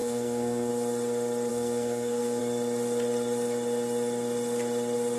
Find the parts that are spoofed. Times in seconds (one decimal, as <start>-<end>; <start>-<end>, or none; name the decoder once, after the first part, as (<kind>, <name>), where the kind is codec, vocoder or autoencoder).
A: 0.0-0.7 (codec, SNAC); 1.5-2.4